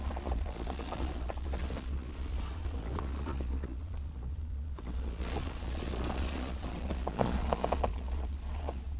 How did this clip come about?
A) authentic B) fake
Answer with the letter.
B